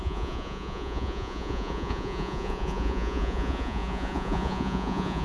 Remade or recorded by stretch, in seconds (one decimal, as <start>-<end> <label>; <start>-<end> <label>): 0.0-5.2 remade